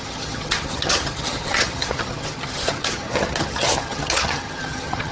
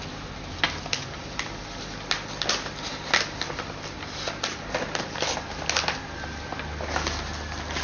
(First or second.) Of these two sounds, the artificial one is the first